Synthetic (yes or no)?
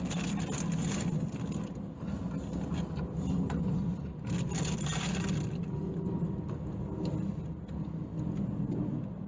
no